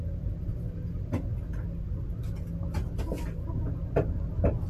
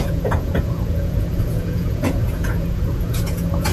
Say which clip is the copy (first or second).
second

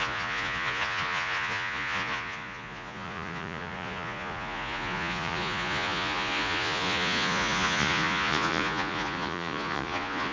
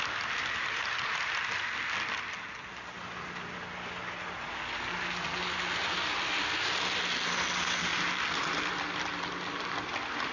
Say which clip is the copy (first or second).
first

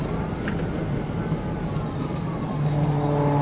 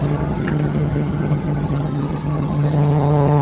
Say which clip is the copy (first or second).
second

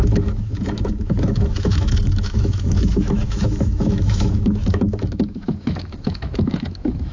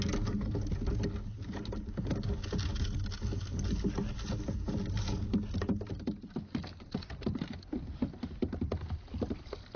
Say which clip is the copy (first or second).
first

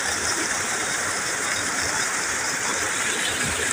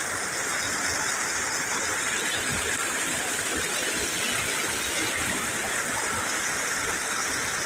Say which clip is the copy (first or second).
first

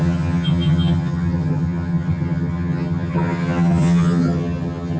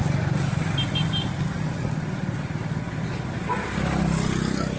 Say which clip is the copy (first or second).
first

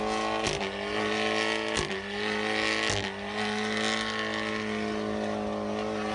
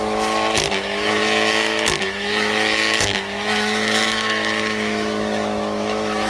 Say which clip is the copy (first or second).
second